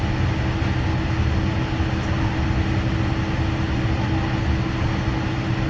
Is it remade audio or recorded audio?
recorded